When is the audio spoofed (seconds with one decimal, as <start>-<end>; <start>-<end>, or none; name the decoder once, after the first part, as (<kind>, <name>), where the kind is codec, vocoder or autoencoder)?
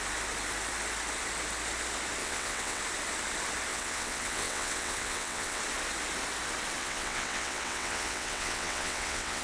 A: 2.2-2.8 (vocoder, WaveNeXt); 3.7-5.6; 6.8-9.4